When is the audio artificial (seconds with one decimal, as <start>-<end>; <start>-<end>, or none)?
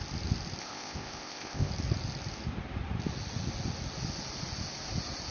0.6-1.7